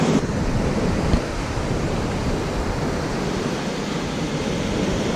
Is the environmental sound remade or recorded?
remade